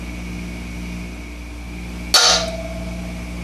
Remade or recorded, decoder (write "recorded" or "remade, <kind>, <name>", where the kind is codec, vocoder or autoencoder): recorded